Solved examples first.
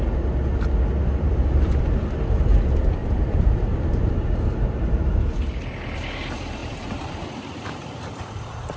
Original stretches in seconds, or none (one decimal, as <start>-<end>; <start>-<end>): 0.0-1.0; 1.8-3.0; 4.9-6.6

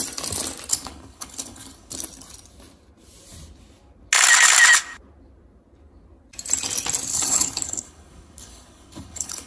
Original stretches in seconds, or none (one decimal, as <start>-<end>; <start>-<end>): 0.0-0.7; 1.9-7.1

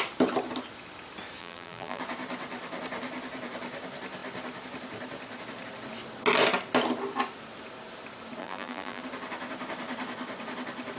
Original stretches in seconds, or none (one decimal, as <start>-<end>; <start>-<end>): 0.0-1.4; 2.0-8.4; 9.0-11.0

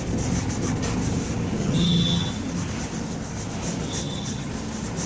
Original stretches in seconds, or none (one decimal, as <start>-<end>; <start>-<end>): 0.0-1.6; 2.3-4.0; 4.5-5.1

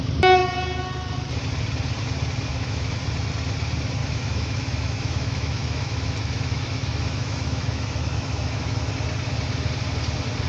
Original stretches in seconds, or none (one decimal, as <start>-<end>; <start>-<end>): 0.0-2.5; 3.0-4.0; 8.9-10.5

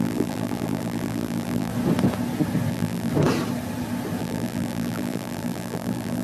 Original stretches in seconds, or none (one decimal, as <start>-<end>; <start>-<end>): 1.7-2.7; 3.1-4.2